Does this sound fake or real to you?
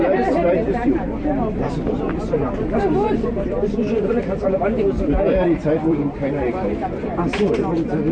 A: real